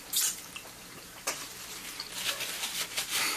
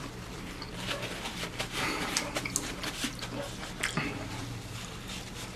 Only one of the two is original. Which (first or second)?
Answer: second